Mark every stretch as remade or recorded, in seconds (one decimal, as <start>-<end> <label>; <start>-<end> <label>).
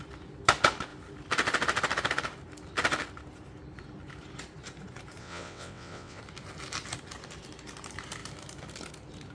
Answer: 0.0-5.2 recorded; 5.2-6.2 remade; 6.2-9.3 recorded